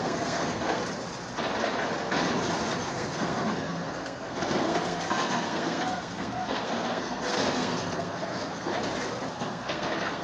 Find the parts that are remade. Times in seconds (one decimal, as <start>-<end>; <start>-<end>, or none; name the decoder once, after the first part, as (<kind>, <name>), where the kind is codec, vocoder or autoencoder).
0.0-0.8 (codec, SNAC); 2.9-8.7; 9.3-10.2